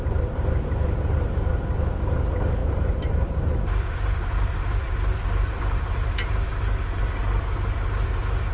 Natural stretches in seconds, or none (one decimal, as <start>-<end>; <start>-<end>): 0.0-2.6; 7.0-8.5

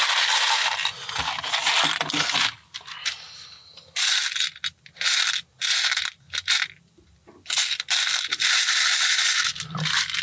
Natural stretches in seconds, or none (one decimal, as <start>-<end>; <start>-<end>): 0.0-10.2

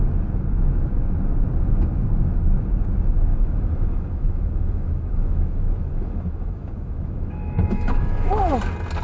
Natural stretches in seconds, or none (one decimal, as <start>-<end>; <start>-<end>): 0.0-3.3; 8.4-9.0

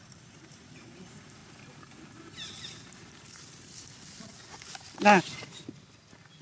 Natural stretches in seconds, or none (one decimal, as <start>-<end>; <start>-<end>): 0.0-6.4

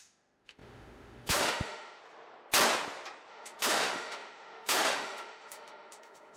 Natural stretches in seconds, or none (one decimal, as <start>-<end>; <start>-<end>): 2.0-3.3

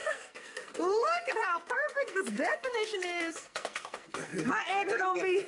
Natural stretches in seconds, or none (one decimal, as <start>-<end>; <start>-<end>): none

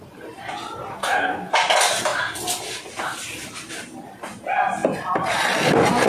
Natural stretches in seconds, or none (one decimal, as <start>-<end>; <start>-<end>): 0.0-0.9; 1.5-6.1